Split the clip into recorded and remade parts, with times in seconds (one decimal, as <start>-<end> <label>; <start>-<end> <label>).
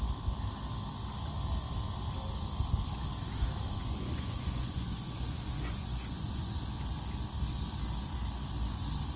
0.0-3.8 recorded; 3.8-6.6 remade; 6.6-9.2 recorded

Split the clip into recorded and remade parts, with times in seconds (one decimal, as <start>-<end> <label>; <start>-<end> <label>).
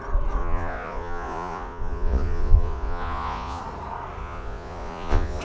0.0-0.4 recorded; 0.4-3.6 remade; 3.6-4.2 recorded; 4.2-5.4 remade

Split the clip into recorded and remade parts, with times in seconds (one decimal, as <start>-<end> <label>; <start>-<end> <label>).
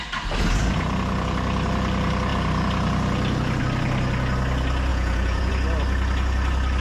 0.0-4.9 recorded; 4.9-5.5 remade; 5.5-6.8 recorded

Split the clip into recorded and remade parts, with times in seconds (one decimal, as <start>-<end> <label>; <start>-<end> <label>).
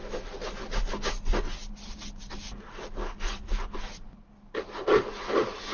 0.0-5.7 recorded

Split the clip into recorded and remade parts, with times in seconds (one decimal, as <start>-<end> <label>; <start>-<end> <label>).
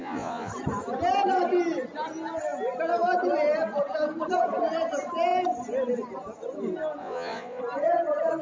0.0-0.5 remade; 0.5-7.0 recorded; 7.0-7.6 remade; 7.6-8.4 recorded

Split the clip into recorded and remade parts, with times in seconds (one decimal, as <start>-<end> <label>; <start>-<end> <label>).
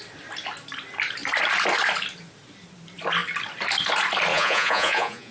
0.0-4.3 recorded; 4.3-5.3 remade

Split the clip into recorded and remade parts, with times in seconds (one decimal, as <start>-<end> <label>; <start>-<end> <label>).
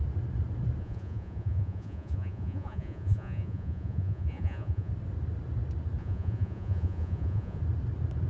0.0-0.8 recorded; 0.8-4.9 remade; 4.9-6.0 recorded; 6.0-7.6 remade; 7.6-8.3 recorded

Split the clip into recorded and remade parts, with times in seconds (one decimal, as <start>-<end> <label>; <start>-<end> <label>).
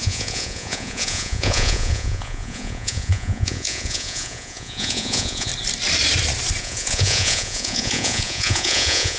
0.0-5.5 remade; 5.5-6.6 recorded; 6.6-9.2 remade